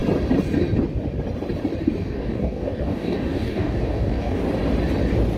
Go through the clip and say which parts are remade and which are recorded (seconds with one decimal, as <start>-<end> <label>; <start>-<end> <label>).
0.0-2.0 recorded; 2.0-4.4 remade; 4.4-5.4 recorded

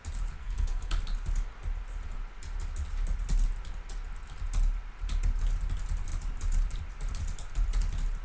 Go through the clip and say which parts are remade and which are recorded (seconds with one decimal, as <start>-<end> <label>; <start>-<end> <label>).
0.0-0.4 recorded; 0.4-0.9 remade; 0.9-8.2 recorded

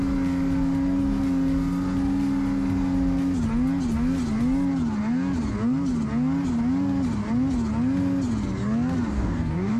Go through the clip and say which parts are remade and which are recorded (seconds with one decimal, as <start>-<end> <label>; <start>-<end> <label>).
0.0-9.1 recorded; 9.1-9.8 remade

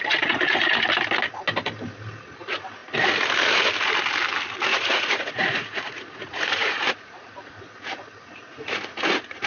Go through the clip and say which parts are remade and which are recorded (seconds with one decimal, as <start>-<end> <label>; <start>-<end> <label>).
0.0-4.7 recorded; 4.7-9.5 remade